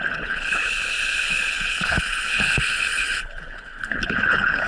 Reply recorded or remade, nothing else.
remade